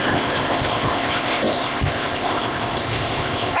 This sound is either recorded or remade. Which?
remade